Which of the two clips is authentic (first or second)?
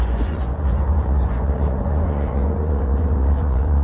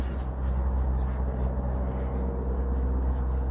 second